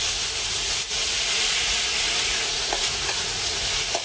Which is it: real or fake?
fake